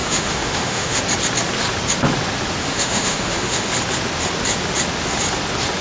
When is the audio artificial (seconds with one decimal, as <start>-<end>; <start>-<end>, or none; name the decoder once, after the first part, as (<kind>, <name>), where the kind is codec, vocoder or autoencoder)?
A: 0.0-1.0 (autoencoder, DAC-VAE); 2.6-3.7